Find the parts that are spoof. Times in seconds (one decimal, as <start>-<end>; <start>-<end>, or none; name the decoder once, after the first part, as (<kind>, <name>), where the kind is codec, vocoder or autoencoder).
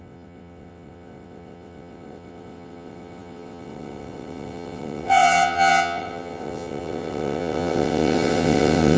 0.0-9.0 (vocoder, WaveNeXt)